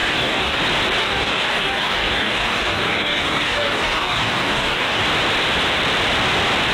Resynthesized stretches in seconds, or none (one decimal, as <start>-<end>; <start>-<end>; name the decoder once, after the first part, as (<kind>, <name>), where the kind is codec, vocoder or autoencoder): 0.0-0.6 (codec, DAC); 1.0-5.0